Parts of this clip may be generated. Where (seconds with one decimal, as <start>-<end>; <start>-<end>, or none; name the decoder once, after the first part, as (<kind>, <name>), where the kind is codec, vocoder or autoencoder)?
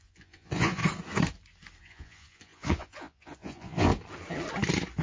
0.0-0.8 (vocoder, Vocos); 1.8-3.9